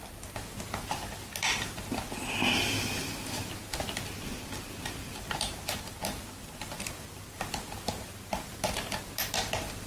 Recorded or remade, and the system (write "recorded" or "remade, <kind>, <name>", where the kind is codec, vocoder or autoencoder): recorded